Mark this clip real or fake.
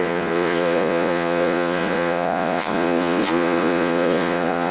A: fake